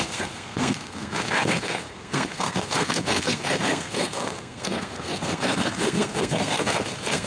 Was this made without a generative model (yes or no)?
no